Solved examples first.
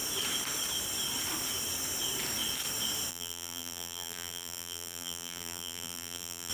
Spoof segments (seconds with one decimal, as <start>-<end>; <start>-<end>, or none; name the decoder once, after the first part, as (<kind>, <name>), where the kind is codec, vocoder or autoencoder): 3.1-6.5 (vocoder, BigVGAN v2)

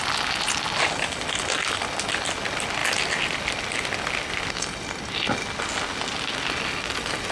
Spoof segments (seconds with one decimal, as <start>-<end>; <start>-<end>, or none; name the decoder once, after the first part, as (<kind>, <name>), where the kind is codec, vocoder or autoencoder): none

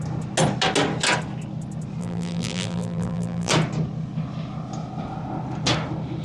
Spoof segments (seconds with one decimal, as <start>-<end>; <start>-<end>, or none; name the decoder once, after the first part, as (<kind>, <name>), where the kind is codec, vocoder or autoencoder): 2.0-3.5 (vocoder, BigVGAN v2)

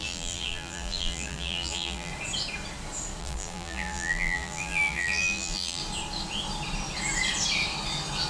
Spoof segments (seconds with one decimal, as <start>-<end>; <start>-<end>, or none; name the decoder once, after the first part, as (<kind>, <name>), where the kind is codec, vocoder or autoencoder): 0.0-2.1 (vocoder, BigVGAN v2); 3.2-5.8

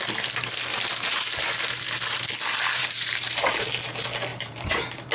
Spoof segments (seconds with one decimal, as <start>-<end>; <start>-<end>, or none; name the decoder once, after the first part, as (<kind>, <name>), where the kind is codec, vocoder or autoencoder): 0.7-2.3 (vocoder, BigVGAN v2); 2.8-3.5; 4.3-5.1